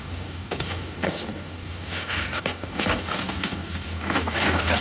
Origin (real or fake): fake